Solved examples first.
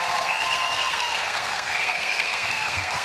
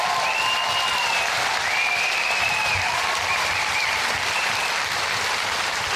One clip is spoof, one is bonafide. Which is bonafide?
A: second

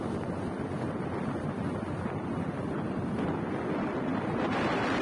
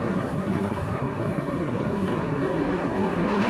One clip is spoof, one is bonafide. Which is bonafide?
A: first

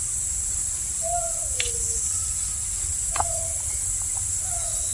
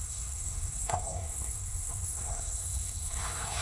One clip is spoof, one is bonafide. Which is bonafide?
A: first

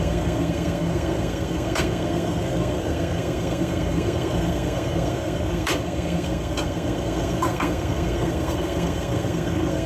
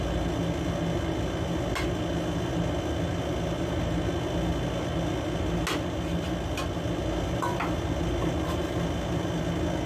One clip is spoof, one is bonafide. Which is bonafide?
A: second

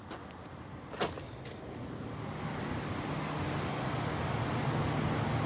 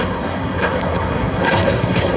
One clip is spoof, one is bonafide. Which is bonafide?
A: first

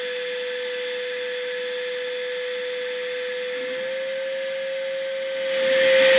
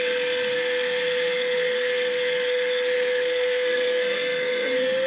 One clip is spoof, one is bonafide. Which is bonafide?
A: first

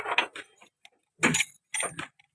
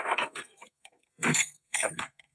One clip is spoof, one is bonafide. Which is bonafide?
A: first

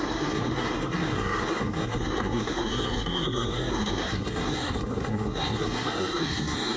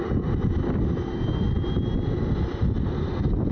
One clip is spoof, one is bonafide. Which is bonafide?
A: second